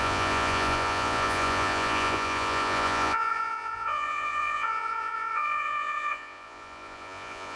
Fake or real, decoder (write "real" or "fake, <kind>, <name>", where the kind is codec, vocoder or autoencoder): fake, vocoder, Vocos